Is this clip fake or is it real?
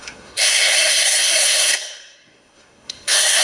fake